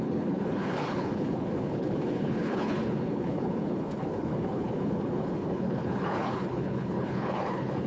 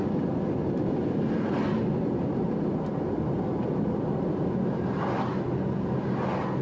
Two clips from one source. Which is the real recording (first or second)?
second